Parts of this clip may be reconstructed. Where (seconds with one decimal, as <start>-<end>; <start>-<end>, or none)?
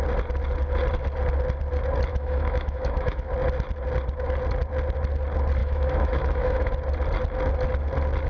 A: 2.1-3.3; 5.6-6.7